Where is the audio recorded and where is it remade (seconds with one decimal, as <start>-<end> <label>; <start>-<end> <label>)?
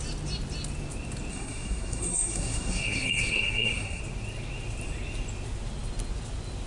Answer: 0.0-1.3 recorded; 1.3-4.0 remade; 4.0-6.7 recorded